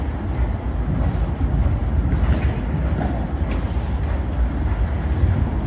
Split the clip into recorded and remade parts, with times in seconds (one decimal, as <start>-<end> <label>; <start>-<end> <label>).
0.0-5.7 recorded